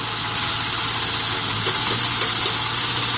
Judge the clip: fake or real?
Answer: real